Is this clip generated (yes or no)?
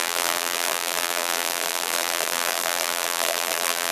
yes